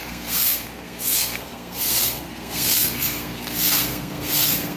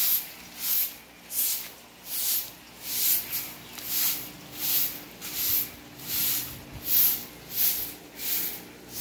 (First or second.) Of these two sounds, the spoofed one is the first